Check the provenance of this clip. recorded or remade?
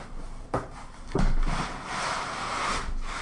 recorded